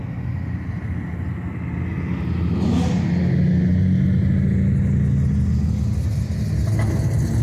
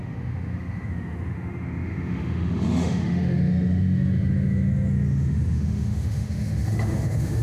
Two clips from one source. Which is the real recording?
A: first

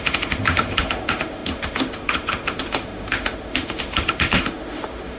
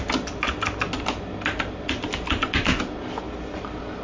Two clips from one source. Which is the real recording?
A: second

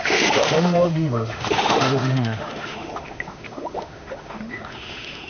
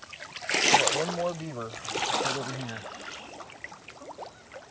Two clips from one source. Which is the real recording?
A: second